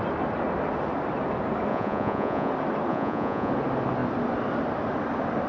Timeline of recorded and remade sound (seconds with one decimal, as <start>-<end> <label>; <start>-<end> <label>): 0.0-1.7 recorded; 1.7-2.5 remade; 2.5-2.9 recorded; 2.9-3.5 remade; 3.5-5.5 recorded